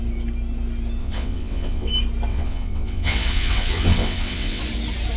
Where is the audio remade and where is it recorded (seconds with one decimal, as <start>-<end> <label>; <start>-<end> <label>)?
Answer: 0.0-1.0 recorded; 1.0-1.9 remade; 1.9-2.3 recorded; 2.3-4.6 remade; 4.6-5.2 recorded